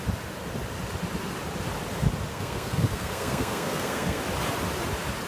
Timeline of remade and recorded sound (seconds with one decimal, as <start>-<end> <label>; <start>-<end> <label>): 0.0-2.3 recorded; 2.3-4.2 remade; 4.2-5.3 recorded